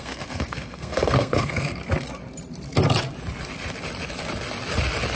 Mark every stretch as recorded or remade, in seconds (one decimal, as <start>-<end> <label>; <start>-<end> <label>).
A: 0.0-1.8 remade; 1.8-5.2 recorded